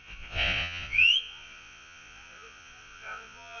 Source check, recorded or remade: remade